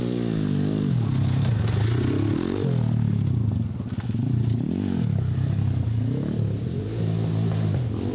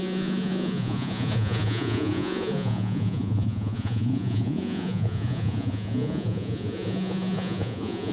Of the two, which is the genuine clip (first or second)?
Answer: first